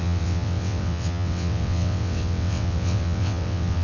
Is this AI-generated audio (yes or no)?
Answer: yes